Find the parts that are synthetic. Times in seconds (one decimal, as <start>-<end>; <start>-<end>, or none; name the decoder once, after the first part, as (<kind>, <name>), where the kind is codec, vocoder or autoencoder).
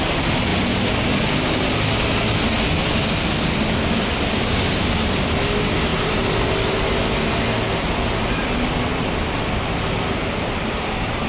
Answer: none